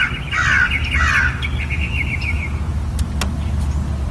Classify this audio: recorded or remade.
recorded